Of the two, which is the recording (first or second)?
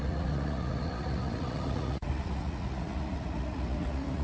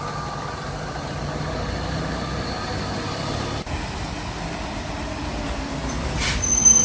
second